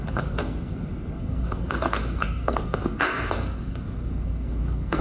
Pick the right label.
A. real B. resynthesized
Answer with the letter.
B